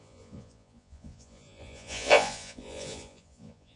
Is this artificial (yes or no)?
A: yes